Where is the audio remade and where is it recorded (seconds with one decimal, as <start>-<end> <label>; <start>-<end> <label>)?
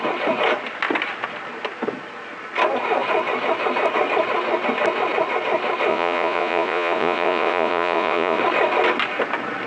0.0-5.9 recorded; 5.9-8.4 remade; 8.4-9.7 recorded